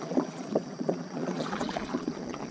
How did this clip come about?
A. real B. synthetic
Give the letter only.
B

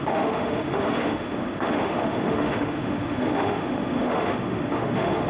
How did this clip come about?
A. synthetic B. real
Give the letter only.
A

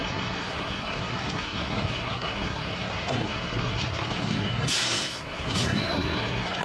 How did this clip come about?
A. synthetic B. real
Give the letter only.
A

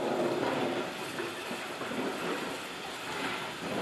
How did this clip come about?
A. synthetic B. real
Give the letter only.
B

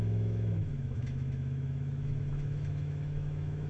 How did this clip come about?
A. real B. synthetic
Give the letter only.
B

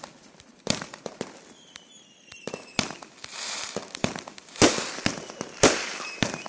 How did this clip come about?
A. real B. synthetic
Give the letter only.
B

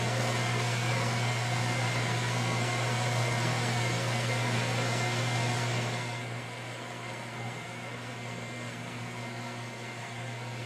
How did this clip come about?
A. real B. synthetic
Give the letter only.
B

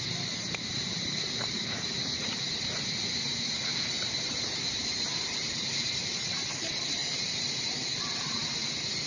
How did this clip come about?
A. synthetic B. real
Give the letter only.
B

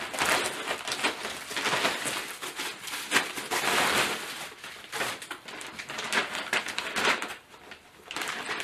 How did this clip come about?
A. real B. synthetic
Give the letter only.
A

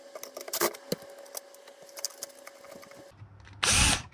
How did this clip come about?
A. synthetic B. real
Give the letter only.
B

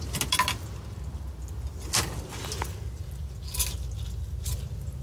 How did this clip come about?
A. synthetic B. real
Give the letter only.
B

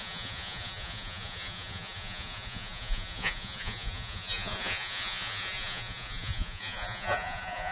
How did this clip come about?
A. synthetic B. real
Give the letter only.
A